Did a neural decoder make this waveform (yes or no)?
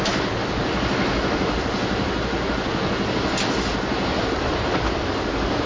no